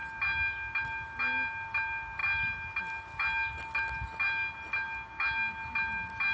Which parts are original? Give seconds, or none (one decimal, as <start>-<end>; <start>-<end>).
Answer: 0.0-6.3